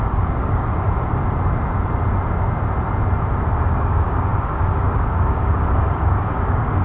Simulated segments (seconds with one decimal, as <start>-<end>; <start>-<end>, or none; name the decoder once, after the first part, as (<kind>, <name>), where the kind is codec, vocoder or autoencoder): 0.0-0.7 (codec, DAC); 3.7-6.8